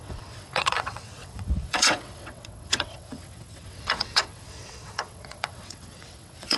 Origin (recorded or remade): remade